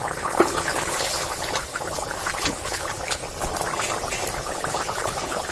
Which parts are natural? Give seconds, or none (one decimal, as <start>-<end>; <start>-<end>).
3.2-4.3